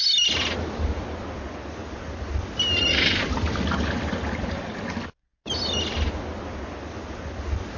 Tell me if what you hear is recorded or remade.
recorded